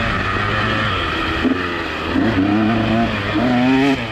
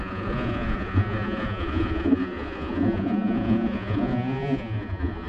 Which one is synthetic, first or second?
second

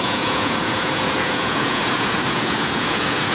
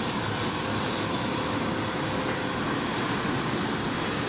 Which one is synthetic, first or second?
first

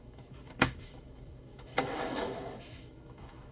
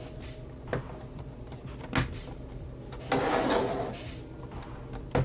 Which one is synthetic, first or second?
first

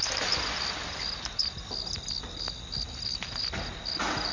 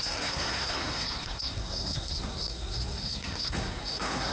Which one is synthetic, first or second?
second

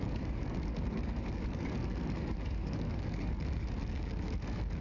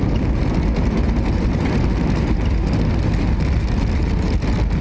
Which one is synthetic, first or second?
first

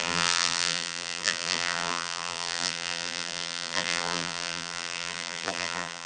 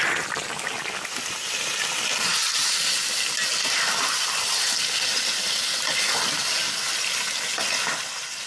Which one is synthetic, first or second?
first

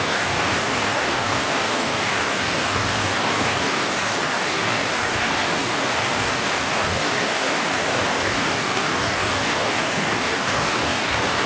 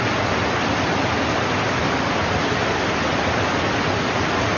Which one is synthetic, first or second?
first